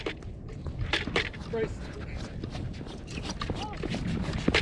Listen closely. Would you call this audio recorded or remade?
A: recorded